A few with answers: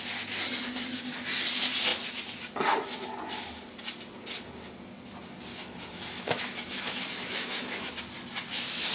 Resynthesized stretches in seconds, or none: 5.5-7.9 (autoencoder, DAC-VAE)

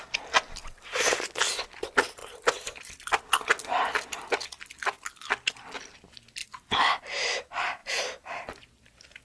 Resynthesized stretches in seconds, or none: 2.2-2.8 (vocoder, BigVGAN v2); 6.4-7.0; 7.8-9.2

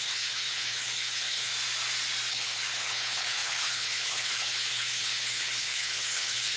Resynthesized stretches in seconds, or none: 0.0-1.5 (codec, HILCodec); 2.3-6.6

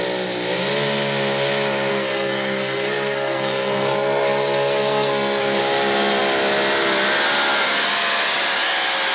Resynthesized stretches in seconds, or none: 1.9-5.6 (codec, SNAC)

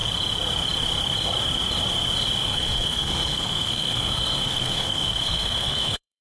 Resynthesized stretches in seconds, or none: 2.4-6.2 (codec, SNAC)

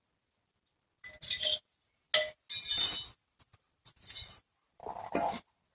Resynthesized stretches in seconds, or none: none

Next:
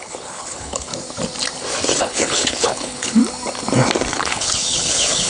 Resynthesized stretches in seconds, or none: 0.0-0.9 (codec, HILCodec); 2.0-3.2; 4.1-5.3